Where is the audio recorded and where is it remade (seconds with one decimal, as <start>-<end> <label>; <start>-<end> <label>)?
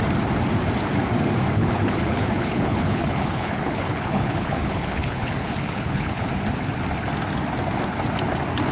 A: 0.0-1.6 recorded; 1.6-6.3 remade; 6.3-8.7 recorded